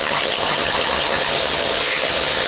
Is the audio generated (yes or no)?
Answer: yes